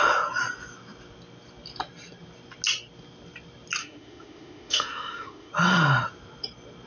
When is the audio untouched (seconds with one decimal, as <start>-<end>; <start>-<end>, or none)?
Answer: 0.0-3.8; 5.5-6.9